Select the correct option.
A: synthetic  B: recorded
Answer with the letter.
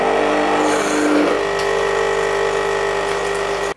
B